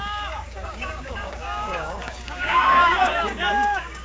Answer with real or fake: fake